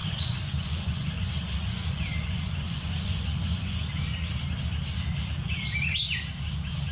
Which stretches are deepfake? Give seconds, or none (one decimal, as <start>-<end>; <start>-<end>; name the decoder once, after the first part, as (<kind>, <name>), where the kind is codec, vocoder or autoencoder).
0.0-4.0 (vocoder, Vocos)